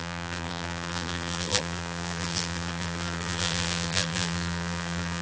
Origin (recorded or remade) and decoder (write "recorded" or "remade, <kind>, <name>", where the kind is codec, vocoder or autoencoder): remade, vocoder, BigVGAN v2